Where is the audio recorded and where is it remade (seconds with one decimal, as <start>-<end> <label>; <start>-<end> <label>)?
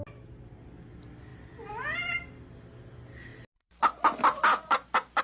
0.0-5.2 recorded